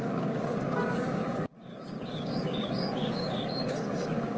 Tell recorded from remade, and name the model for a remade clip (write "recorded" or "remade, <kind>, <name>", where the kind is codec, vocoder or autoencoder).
remade, codec, DAC